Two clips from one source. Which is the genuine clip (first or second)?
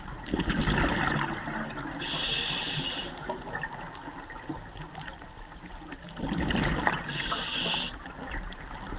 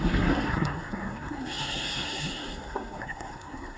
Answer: first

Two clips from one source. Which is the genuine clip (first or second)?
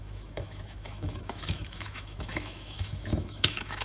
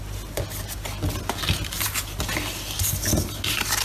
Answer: second